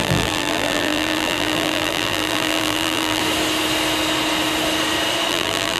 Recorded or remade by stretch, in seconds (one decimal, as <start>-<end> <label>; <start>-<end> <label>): 0.0-3.2 remade; 3.2-5.3 recorded; 5.3-5.8 remade